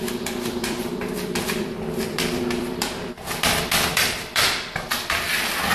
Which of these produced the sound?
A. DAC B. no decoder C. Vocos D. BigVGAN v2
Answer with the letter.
D